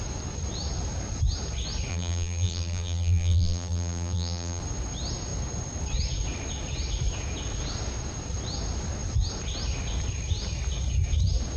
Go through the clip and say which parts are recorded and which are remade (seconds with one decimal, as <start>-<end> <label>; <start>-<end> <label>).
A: 0.0-1.9 recorded; 1.9-4.6 remade; 4.6-11.6 recorded